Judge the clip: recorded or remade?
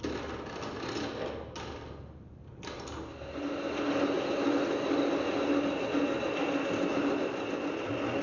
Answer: recorded